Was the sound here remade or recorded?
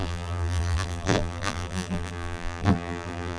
remade